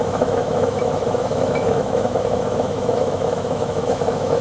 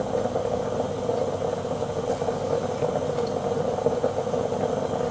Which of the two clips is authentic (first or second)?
second